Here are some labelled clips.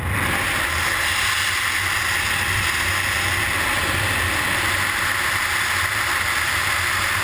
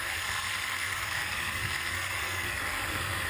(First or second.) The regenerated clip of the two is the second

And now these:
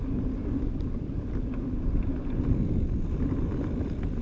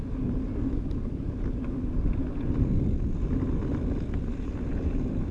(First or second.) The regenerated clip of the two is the first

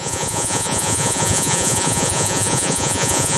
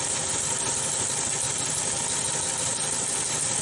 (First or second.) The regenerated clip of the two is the first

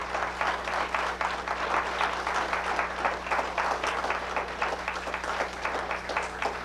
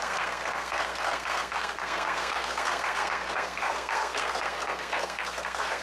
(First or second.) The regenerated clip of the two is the second